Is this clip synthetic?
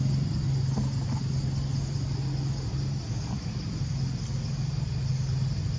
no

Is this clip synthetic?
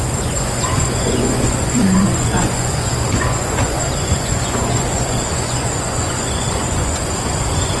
yes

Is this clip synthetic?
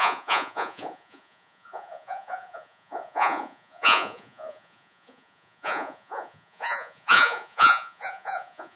yes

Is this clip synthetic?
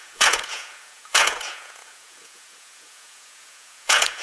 yes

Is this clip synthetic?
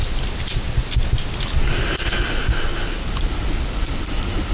no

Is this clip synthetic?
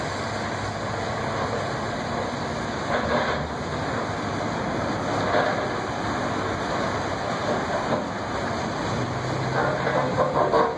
no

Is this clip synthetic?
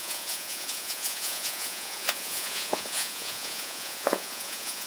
yes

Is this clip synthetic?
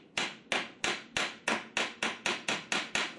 no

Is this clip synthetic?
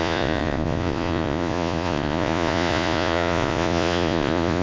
yes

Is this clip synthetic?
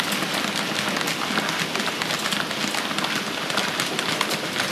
no